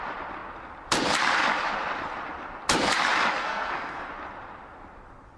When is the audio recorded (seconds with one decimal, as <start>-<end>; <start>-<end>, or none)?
0.0-3.4; 4.1-5.4